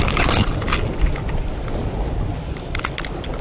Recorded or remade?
recorded